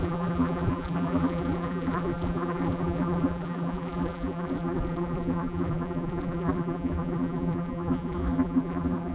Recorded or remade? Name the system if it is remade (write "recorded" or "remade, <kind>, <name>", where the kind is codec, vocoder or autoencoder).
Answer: remade, vocoder, BigVGAN v2